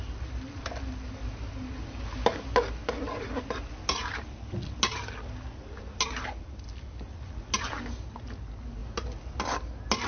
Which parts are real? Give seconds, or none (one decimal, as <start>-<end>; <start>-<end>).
0.0-10.1